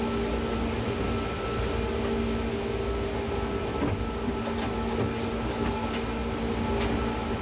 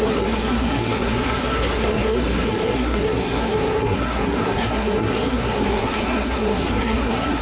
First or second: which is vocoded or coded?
second